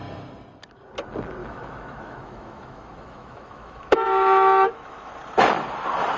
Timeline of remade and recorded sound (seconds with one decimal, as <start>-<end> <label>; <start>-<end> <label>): 0.0-1.4 recorded; 1.4-5.1 remade; 5.1-6.2 recorded